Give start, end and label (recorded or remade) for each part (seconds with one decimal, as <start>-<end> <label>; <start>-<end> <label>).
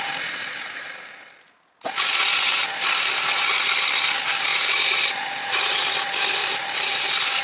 0.0-6.4 recorded; 6.4-7.4 remade